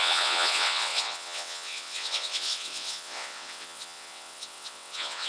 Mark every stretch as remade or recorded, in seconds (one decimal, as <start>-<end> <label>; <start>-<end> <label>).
0.0-5.3 remade